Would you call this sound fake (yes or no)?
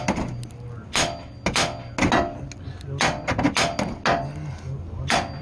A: no